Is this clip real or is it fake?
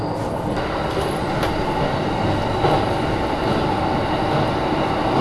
real